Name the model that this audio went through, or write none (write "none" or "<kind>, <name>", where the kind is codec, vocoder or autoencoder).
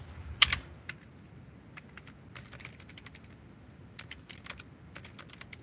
none